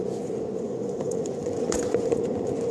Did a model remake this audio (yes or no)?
yes